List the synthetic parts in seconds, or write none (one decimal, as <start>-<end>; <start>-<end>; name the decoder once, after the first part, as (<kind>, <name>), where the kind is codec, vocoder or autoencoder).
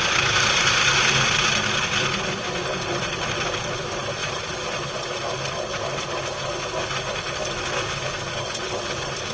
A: 4.2-4.8 (vocoder, BigVGAN v2)